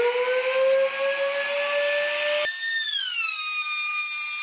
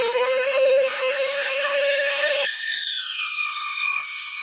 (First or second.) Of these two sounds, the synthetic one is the second